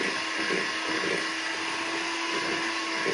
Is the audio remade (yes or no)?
no